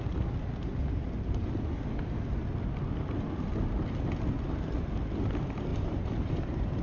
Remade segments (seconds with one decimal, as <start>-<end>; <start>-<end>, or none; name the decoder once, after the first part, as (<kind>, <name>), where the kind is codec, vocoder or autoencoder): 5.7-6.8 (vocoder, BigVGAN v2)